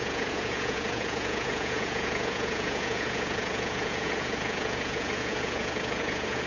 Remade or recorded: remade